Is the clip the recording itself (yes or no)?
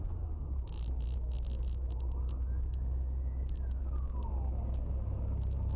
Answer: yes